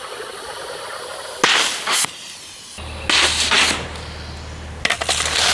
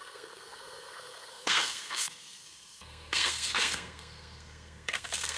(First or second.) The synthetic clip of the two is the second